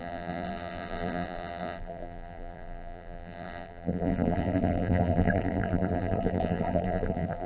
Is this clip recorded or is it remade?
remade